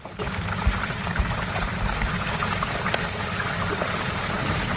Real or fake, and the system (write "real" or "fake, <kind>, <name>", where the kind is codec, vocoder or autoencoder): real